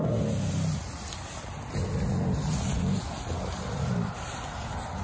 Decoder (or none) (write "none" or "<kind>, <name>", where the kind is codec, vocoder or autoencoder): none